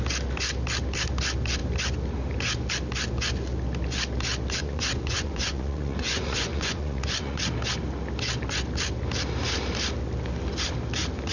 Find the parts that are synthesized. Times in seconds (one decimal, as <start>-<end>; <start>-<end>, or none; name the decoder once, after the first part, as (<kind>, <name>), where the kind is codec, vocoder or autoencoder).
4.6-7.4 (vocoder, Vocos)